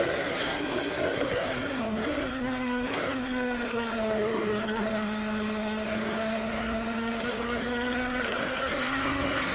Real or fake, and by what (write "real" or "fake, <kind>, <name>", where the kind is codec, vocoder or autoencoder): fake, codec, SNAC